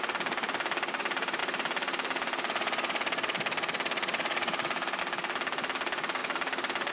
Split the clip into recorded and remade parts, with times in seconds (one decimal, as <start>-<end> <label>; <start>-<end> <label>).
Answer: 0.0-6.9 recorded